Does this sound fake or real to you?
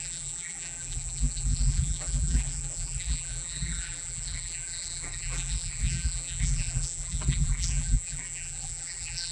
fake